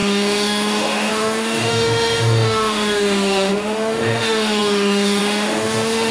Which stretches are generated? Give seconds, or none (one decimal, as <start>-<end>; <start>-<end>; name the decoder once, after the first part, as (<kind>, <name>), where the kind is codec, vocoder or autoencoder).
0.0-6.1 (autoencoder, DAC-VAE)